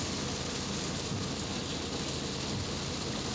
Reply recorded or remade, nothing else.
recorded